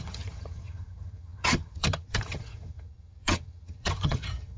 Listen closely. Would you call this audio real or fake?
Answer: fake